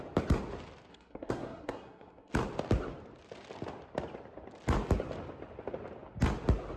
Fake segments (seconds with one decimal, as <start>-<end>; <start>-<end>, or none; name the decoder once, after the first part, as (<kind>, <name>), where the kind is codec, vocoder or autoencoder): 0.9-2.3 (codec, SNAC)